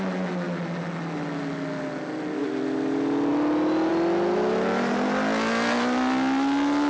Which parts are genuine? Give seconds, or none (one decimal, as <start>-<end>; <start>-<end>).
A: 0.0-6.9